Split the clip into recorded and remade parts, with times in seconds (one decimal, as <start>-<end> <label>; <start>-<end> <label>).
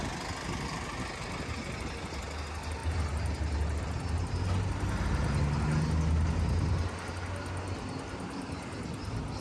0.0-9.4 recorded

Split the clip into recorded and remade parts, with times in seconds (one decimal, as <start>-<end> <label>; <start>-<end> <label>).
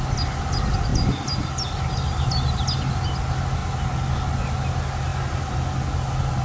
0.0-0.9 recorded; 0.9-1.5 remade; 1.5-6.4 recorded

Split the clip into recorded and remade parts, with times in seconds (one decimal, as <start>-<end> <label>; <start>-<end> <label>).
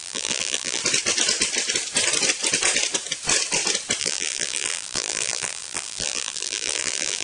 0.0-0.8 remade; 0.8-4.0 recorded; 4.0-7.2 remade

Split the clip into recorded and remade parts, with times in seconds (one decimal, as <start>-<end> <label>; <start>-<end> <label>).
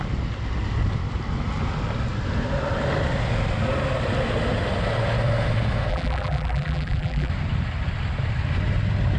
0.0-5.9 recorded; 5.9-7.3 remade; 7.3-9.2 recorded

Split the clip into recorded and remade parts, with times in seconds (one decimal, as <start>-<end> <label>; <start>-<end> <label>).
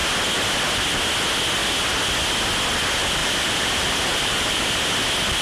0.0-3.2 recorded; 3.2-4.7 remade; 4.7-5.4 recorded